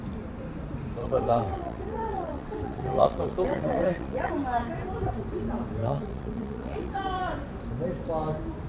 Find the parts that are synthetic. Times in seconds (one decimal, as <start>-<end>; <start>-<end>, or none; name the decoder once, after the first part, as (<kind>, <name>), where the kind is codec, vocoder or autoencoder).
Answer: 1.0-4.3 (vocoder, WaveNeXt); 5.8-6.9